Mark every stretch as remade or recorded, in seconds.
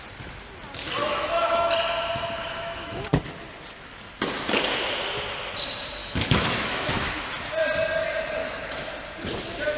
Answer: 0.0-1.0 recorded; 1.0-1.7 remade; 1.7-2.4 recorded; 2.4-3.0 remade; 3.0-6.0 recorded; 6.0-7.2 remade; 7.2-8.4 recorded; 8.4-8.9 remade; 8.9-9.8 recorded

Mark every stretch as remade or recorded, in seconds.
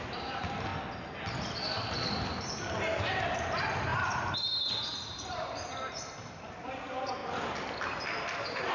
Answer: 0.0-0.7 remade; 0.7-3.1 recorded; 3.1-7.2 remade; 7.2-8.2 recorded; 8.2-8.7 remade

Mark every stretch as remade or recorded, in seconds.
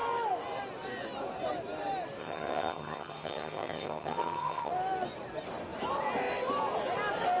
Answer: 0.0-2.2 recorded; 2.2-4.7 remade; 4.7-7.4 recorded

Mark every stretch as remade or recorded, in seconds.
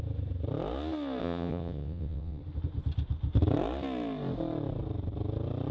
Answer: 0.0-1.2 recorded; 1.2-2.4 remade; 2.4-5.7 recorded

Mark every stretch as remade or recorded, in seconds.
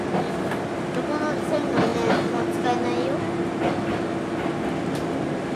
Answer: 0.0-5.6 recorded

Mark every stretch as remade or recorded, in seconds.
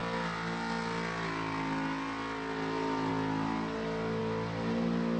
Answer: 0.0-5.2 recorded